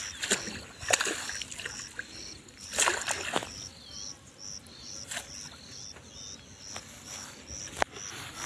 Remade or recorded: recorded